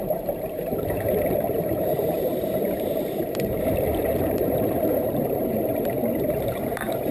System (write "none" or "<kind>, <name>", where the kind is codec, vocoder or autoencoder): vocoder, BigVGAN v2